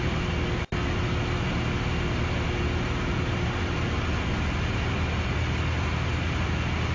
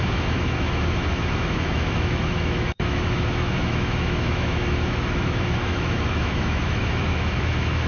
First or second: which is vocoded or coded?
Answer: second